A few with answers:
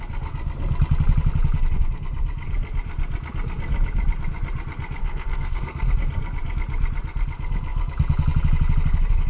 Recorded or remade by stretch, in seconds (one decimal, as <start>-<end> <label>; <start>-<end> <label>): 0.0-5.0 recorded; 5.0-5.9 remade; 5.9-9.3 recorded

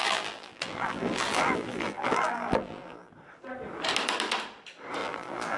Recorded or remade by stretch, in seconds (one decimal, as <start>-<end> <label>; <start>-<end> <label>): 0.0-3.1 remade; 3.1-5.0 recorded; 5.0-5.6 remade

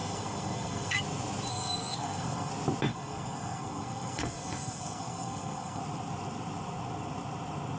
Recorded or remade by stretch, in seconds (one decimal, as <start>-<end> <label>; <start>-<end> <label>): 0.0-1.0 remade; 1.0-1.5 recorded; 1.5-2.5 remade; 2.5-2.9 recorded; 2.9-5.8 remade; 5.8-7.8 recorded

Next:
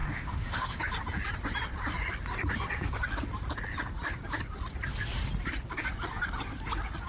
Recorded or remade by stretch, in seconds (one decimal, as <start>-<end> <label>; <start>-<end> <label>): 0.0-0.8 remade; 0.8-7.1 recorded

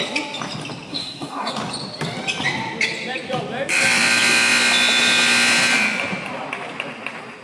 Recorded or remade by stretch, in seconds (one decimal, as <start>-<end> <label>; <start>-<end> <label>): 0.0-0.9 recorded; 0.9-1.5 remade; 1.5-7.4 recorded

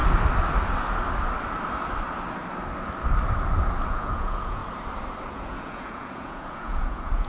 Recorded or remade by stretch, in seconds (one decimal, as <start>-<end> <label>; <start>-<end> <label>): 0.0-3.9 recorded; 3.9-4.6 remade; 4.6-5.3 recorded; 5.3-7.3 remade

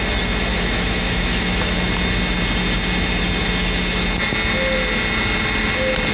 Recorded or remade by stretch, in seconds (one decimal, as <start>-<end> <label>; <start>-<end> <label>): 0.0-0.5 recorded; 0.5-1.9 remade; 1.9-6.1 recorded